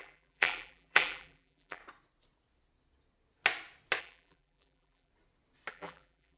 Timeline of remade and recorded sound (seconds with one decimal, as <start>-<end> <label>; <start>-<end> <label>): 0.0-1.8 remade; 1.8-4.0 recorded; 4.0-5.1 remade; 5.1-5.7 recorded; 5.7-6.4 remade